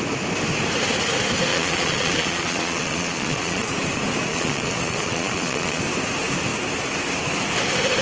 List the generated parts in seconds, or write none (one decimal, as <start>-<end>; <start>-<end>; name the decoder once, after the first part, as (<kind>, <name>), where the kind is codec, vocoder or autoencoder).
1.5-3.7 (vocoder, Vocos); 4.3-5.8